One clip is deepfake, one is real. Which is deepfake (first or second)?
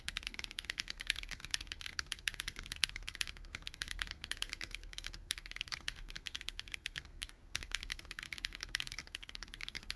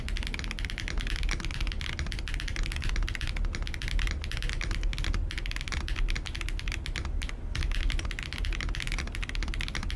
first